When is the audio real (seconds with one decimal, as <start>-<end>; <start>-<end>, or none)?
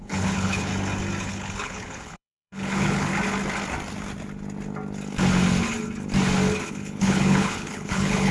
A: 0.7-1.3; 3.1-6.7